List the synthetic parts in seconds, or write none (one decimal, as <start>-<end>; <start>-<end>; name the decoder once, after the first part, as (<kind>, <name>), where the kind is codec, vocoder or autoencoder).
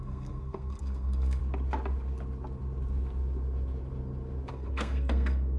0.0-1.4 (codec, SNAC); 4.5-5.6